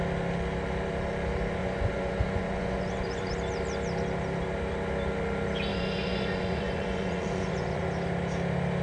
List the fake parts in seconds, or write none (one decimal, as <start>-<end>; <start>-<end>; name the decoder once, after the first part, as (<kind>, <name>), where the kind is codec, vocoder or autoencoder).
1.6-3.3 (vocoder, Vocos); 5.7-7.8